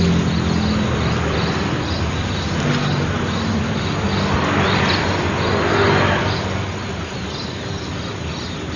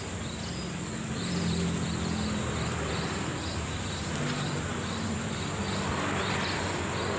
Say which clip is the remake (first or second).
second